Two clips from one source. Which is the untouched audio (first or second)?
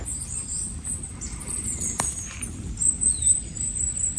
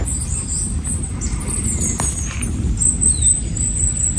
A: second